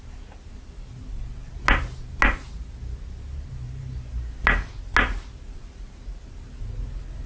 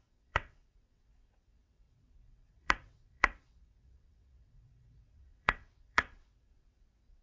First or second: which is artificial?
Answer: second